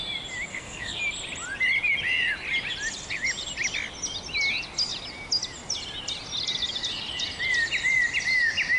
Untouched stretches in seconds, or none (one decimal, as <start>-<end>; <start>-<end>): 0.0-0.5; 1.0-8.8

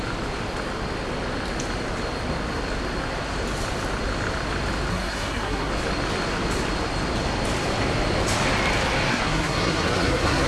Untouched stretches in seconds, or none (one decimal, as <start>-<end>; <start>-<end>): 0.0-4.9; 5.7-9.1

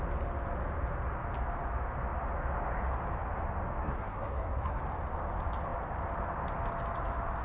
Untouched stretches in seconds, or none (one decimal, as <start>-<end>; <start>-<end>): 0.0-3.8; 4.8-7.4

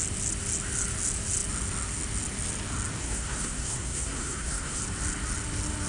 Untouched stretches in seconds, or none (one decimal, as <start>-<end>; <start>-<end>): 0.0-3.0; 4.8-5.9

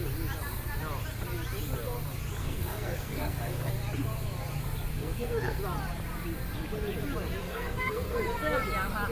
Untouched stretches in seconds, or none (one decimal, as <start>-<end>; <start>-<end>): 0.0-2.4; 3.7-4.9; 5.6-7.4; 8.2-9.1